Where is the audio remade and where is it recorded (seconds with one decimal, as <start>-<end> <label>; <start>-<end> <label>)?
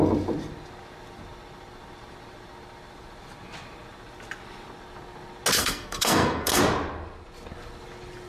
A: 0.0-5.6 recorded; 5.6-6.6 remade; 6.6-8.3 recorded